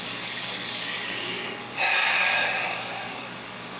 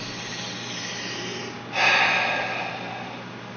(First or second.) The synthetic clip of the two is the first